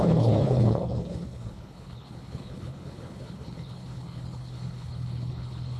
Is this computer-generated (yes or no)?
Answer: yes